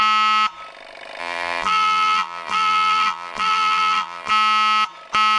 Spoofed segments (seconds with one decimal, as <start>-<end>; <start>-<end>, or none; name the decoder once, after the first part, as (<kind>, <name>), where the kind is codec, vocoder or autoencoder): 1.2-4.3 (vocoder, BigVGAN v2)